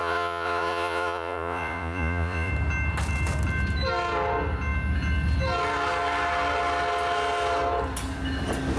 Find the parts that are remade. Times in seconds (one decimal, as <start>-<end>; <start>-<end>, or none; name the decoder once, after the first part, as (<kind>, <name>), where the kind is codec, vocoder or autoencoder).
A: 0.0-2.5 (vocoder, Vocos)